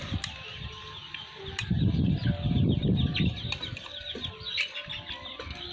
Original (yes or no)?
yes